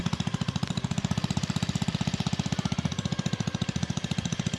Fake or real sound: fake